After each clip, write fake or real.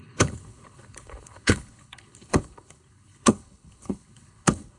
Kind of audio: fake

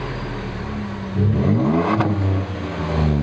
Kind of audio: real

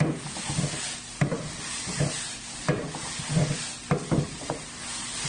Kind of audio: real